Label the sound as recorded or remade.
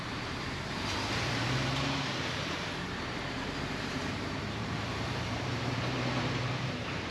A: remade